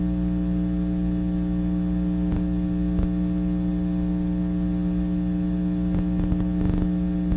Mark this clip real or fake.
real